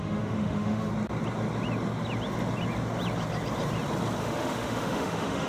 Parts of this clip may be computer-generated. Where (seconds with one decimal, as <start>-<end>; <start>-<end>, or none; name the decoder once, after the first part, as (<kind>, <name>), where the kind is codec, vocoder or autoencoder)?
0.0-0.9 (autoencoder, DAC-VAE); 4.2-5.5